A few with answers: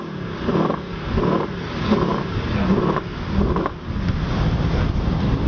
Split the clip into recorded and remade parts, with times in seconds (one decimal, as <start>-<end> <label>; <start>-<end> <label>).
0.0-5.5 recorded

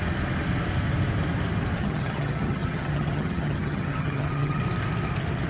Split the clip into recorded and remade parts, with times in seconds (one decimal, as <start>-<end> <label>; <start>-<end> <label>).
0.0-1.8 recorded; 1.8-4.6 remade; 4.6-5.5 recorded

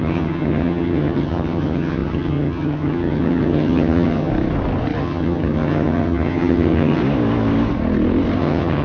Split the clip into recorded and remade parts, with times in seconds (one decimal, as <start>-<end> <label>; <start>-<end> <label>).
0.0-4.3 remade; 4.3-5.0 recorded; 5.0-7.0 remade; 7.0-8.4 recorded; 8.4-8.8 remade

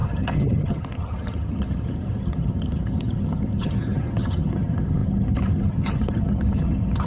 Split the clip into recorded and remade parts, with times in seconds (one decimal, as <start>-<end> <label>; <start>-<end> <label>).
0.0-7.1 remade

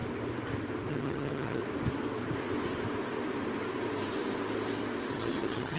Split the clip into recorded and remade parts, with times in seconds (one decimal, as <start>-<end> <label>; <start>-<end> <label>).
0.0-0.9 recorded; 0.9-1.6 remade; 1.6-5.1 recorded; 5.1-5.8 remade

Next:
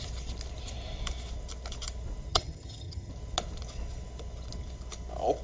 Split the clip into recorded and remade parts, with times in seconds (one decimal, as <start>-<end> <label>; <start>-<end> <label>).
0.0-2.3 recorded; 2.3-3.1 remade; 3.1-5.4 recorded

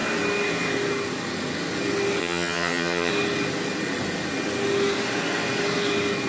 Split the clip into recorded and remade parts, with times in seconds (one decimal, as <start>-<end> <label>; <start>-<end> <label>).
0.0-2.2 recorded; 2.2-3.1 remade; 3.1-6.3 recorded